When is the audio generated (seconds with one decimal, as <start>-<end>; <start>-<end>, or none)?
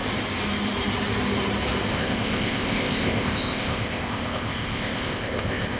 1.9-5.8